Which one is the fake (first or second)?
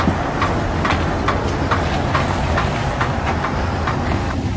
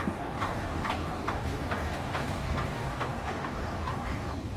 second